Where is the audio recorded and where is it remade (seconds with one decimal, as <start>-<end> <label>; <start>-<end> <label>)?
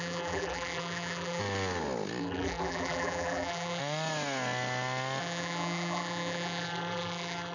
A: 0.0-1.4 remade; 1.4-2.2 recorded; 2.2-3.8 remade; 3.8-5.2 recorded; 5.2-7.5 remade